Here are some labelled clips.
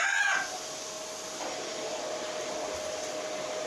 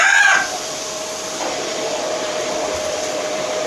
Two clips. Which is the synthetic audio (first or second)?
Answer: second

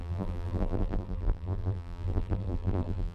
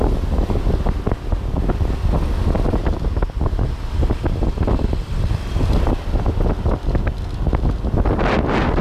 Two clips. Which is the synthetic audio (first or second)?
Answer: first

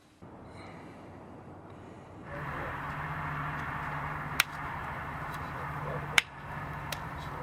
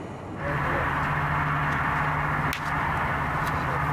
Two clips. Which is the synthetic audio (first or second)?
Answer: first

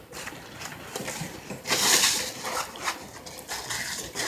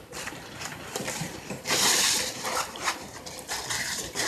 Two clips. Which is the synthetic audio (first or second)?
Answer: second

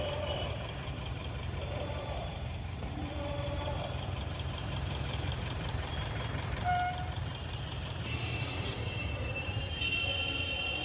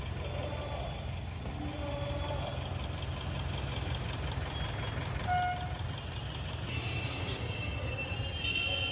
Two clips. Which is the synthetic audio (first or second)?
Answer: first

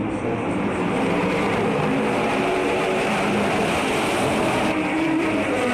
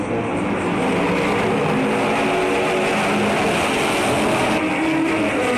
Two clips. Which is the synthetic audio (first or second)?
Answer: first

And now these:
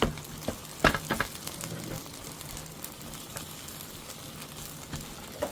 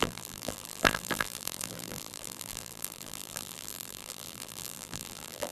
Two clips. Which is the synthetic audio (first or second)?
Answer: second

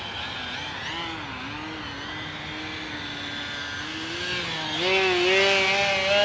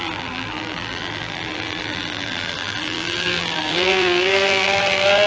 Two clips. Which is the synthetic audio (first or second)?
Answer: second